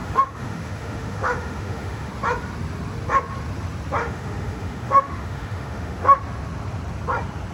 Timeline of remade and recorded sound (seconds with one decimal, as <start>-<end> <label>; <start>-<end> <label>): 0.0-2.1 remade; 2.1-4.0 recorded; 4.0-6.2 remade; 6.2-7.5 recorded